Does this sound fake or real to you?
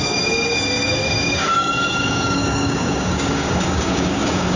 fake